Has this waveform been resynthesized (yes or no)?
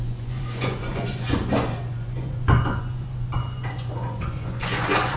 yes